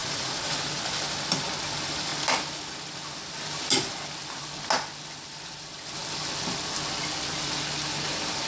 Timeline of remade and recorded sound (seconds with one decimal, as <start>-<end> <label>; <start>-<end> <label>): 0.0-0.5 remade; 0.5-8.5 recorded